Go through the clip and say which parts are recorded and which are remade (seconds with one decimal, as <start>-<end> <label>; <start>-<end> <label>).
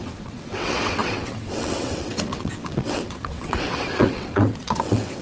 0.0-5.2 remade